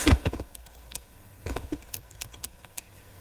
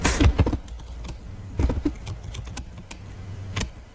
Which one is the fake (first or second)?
first